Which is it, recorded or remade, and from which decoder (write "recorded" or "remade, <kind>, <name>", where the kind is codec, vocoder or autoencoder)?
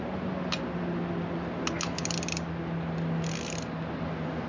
recorded